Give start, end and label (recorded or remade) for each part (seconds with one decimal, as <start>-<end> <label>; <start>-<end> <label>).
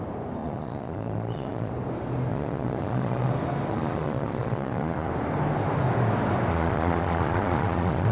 0.0-0.4 recorded; 0.4-1.7 remade; 1.7-2.3 recorded; 2.3-3.3 remade; 3.3-3.7 recorded; 3.7-5.1 remade; 5.1-6.5 recorded; 6.5-8.1 remade